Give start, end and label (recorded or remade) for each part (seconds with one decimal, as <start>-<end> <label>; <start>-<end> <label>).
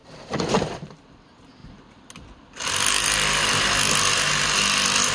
0.0-1.1 remade; 1.1-5.1 recorded